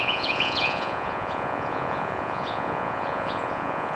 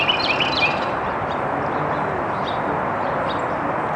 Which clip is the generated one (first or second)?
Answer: first